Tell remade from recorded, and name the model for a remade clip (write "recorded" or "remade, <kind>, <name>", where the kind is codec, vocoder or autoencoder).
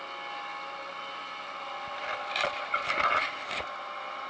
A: recorded